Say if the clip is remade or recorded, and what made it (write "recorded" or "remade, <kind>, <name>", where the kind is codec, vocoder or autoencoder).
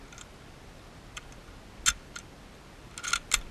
recorded